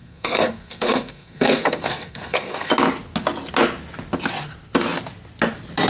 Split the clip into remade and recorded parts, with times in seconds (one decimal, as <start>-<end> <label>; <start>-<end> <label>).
0.0-2.7 remade; 2.7-5.9 recorded